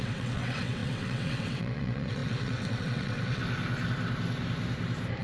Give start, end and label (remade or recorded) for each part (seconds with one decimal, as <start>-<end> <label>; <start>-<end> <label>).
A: 0.0-3.4 remade; 3.4-5.2 recorded